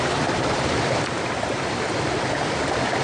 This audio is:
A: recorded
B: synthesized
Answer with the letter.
A